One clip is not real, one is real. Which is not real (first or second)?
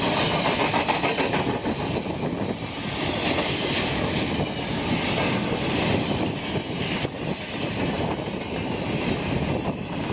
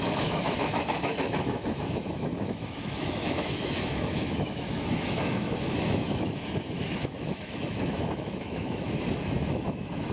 second